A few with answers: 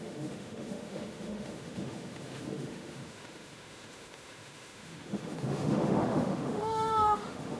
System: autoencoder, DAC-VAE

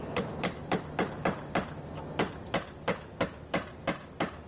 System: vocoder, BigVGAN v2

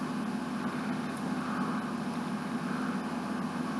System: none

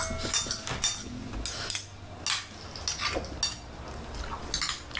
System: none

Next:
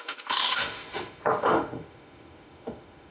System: autoencoder, DAC-VAE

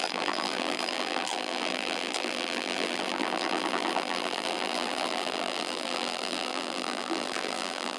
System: vocoder, BigVGAN v2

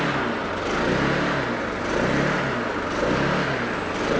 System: none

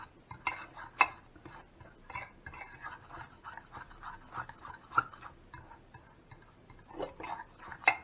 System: none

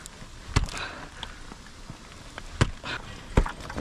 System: none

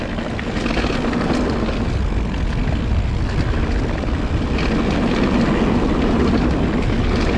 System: none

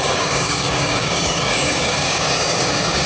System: codec, DAC